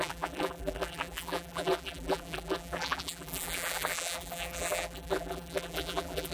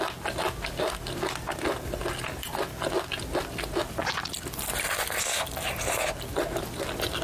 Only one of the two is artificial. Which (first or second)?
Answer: first